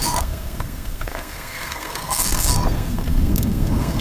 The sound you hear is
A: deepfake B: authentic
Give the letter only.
A